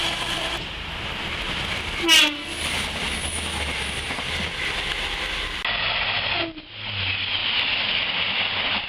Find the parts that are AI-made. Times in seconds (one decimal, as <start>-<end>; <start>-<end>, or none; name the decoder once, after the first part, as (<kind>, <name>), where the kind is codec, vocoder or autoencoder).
none